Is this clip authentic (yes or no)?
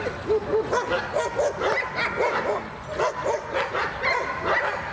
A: yes